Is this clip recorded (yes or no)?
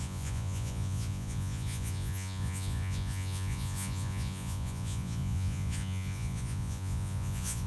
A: no